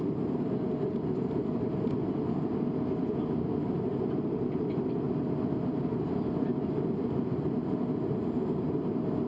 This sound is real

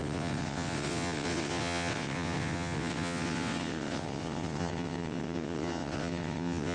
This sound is fake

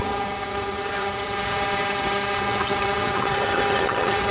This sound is fake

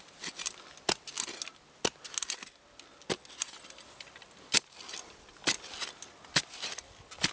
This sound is real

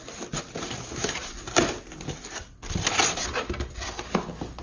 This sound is real